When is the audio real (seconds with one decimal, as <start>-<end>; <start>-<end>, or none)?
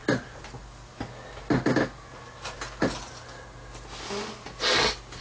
0.0-5.2